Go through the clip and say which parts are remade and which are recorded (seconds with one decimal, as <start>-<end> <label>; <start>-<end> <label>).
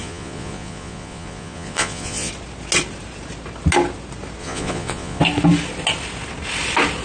0.0-2.3 remade; 2.3-4.4 recorded; 4.4-5.2 remade; 5.2-7.0 recorded